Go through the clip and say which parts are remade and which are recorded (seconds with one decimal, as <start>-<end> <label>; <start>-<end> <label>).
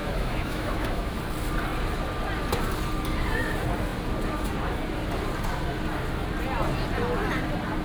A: 0.0-1.2 remade; 1.2-7.8 recorded